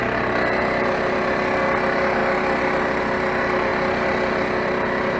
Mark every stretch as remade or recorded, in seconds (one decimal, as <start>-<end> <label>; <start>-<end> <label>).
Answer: 0.0-5.2 recorded